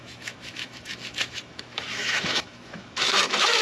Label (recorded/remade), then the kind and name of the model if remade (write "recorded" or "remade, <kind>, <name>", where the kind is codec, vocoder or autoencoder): remade, autoencoder, DAC-VAE